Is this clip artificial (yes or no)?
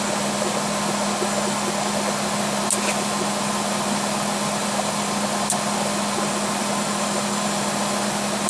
no